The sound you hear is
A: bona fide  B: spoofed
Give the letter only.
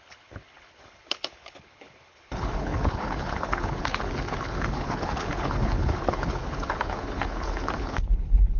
B